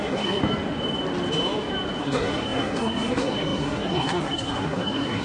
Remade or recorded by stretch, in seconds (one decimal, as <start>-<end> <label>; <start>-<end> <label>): 0.0-0.4 remade; 0.4-2.0 recorded; 2.0-5.2 remade